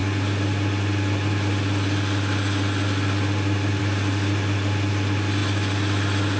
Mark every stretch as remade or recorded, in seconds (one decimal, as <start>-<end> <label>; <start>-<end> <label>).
0.0-6.4 recorded